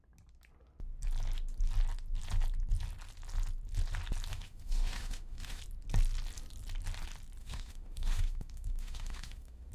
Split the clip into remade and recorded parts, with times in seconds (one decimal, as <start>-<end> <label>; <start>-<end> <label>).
0.0-4.3 recorded; 4.3-5.6 remade; 5.6-7.4 recorded; 7.4-9.7 remade